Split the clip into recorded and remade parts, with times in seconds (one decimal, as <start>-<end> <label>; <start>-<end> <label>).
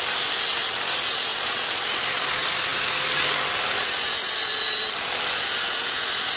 0.0-6.4 recorded